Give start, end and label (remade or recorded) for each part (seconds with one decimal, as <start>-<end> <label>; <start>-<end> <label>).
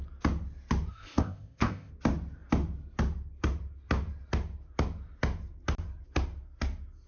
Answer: 0.0-0.9 recorded; 0.9-1.9 remade; 1.9-7.1 recorded